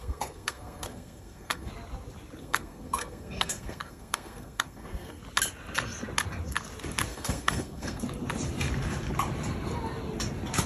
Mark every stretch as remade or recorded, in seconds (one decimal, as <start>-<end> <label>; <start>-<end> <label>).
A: 0.0-1.7 remade; 1.7-2.4 recorded; 2.4-5.2 remade; 5.2-7.1 recorded; 7.1-8.0 remade; 8.0-10.7 recorded

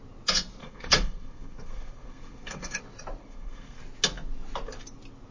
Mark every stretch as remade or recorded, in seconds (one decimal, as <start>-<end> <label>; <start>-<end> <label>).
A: 0.0-0.6 recorded; 0.6-2.8 remade; 2.8-3.2 recorded; 3.2-3.8 remade; 3.8-5.3 recorded

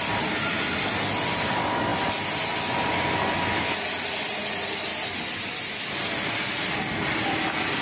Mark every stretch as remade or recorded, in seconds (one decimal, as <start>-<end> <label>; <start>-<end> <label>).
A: 0.0-7.8 recorded

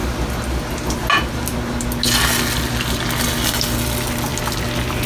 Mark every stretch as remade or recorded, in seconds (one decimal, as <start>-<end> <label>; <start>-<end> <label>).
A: 0.0-5.1 recorded